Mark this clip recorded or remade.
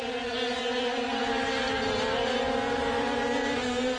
recorded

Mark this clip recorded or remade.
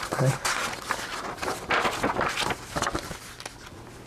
recorded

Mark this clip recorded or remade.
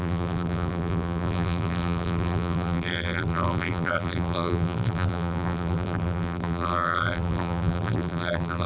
remade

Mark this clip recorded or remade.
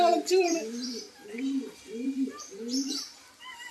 remade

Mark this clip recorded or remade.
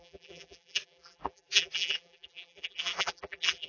remade